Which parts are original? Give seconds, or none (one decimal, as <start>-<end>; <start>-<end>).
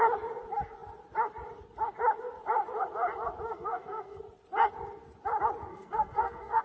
0.0-3.5; 4.2-5.7